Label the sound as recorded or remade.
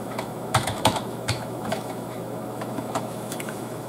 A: remade